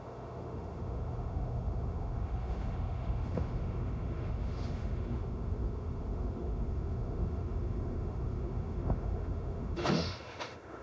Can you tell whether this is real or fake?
fake